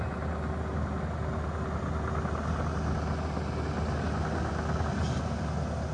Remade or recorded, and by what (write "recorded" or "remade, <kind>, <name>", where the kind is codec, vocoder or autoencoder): recorded